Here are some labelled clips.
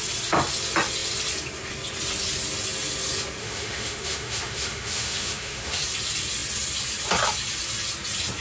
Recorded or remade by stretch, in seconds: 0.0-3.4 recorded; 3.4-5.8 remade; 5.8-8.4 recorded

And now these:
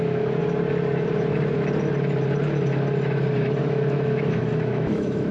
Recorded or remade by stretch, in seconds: 0.0-0.4 remade; 0.4-3.6 recorded; 3.6-5.3 remade

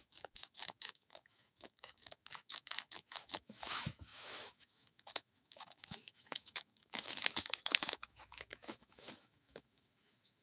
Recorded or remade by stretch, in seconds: 0.0-10.4 remade

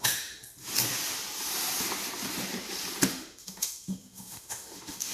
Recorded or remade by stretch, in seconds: 0.0-0.4 remade; 0.4-3.1 recorded; 3.1-5.1 remade

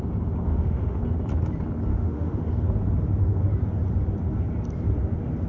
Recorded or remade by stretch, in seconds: 0.0-0.5 recorded; 0.5-1.0 remade; 1.0-1.9 recorded; 1.9-2.4 remade; 2.4-5.5 recorded

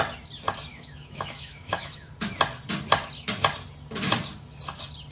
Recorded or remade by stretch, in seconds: 0.0-0.7 recorded; 0.7-2.1 remade; 2.1-5.1 recorded

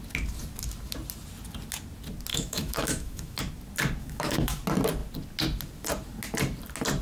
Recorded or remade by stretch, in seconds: 0.0-2.3 recorded; 2.3-3.4 remade; 3.4-4.0 recorded; 4.0-4.6 remade; 4.6-7.0 recorded

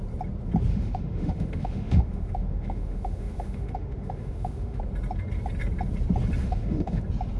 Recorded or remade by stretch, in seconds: 0.0-0.7 recorded; 0.7-4.8 remade; 4.8-6.4 recorded; 6.4-7.0 remade; 7.0-7.4 recorded